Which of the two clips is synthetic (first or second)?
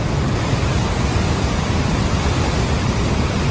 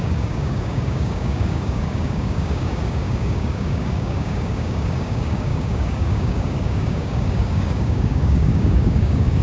second